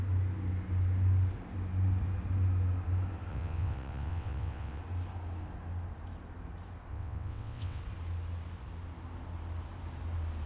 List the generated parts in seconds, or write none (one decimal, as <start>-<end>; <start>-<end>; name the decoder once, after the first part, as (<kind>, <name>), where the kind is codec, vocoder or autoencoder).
3.3-4.8 (vocoder, WaveNeXt); 6.9-7.8